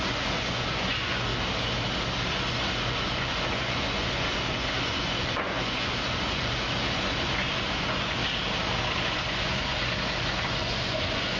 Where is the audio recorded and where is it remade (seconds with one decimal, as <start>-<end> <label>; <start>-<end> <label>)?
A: 0.0-1.3 remade; 1.3-2.3 recorded; 2.3-8.2 remade; 8.2-8.9 recorded; 8.9-11.4 remade